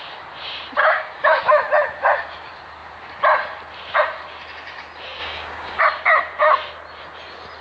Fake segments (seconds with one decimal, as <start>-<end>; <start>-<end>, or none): 0.8-1.4; 5.2-5.8